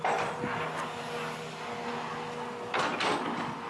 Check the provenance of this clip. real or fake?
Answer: real